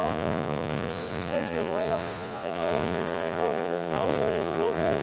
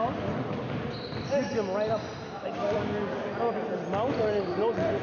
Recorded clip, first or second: second